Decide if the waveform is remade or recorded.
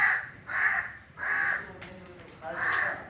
remade